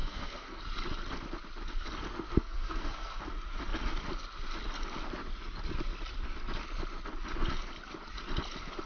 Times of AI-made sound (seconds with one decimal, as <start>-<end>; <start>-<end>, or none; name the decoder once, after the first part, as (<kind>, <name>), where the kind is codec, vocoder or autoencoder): 0.0-0.6 (codec, SNAC); 2.1-3.2